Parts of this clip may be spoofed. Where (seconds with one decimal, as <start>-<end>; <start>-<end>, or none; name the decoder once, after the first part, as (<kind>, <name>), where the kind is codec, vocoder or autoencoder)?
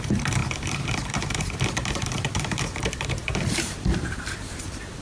0.0-5.0 (vocoder, BigVGAN v2)